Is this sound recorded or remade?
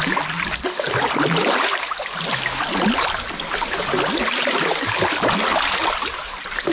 recorded